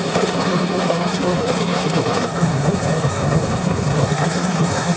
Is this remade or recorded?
remade